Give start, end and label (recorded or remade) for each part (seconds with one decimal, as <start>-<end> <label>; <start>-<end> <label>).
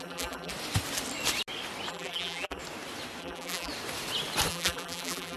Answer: 0.0-0.5 remade; 0.5-1.9 recorded; 1.9-2.6 remade; 2.6-3.2 recorded; 3.2-3.7 remade; 3.7-4.5 recorded; 4.5-5.4 remade